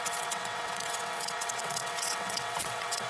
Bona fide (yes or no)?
no